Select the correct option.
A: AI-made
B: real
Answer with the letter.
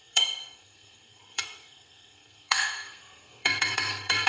A